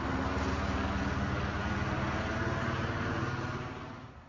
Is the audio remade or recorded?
recorded